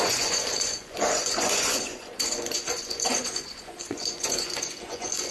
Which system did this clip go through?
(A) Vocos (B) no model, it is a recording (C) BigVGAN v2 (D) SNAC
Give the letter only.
A